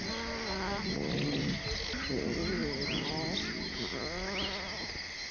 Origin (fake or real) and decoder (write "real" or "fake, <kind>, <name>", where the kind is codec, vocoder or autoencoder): real